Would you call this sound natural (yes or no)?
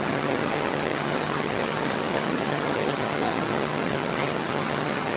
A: no